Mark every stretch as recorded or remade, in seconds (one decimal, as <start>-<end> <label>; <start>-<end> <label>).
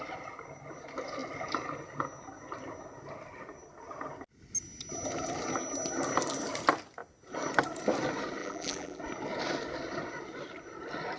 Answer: 0.0-8.4 recorded; 8.4-9.0 remade; 9.0-11.2 recorded